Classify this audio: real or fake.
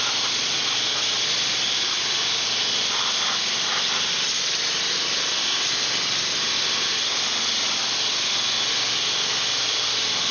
real